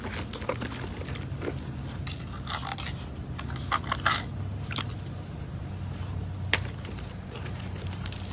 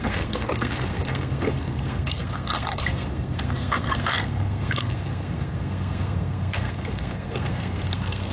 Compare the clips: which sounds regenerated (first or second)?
second